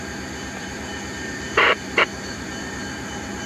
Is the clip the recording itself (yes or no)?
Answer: no